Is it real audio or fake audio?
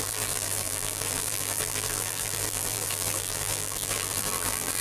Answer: fake